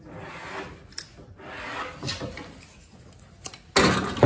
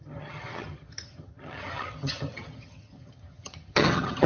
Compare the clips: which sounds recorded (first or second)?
first